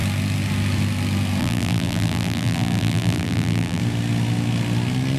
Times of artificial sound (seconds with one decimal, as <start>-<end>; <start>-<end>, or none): 1.4-3.8